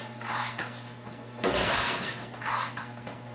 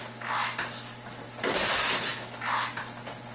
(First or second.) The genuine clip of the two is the second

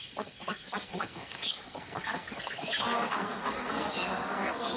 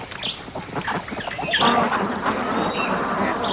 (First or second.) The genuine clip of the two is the second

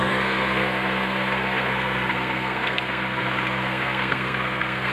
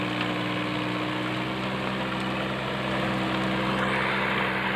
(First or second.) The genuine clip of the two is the second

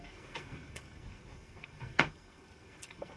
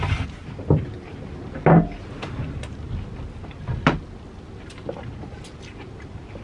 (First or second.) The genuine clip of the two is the second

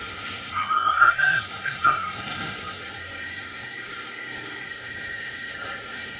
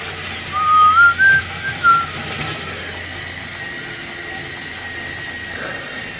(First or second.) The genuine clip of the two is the second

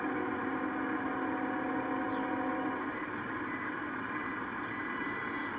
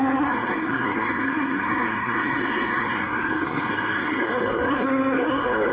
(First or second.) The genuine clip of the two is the first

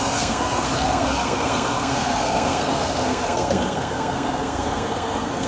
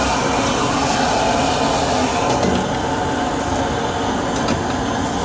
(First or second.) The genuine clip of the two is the second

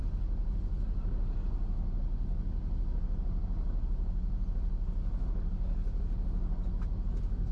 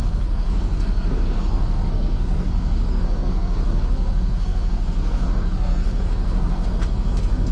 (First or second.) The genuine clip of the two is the first